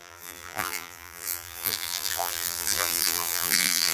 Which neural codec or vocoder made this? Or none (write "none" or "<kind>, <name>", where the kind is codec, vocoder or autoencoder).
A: vocoder, BigVGAN v2